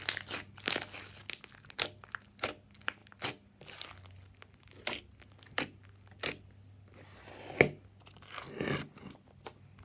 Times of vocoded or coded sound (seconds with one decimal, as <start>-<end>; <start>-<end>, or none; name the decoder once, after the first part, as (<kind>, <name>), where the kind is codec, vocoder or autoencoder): none